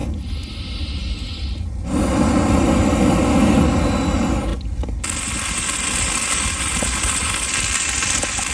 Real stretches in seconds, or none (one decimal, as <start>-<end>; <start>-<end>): 0.0-8.5